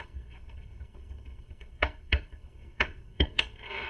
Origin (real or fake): fake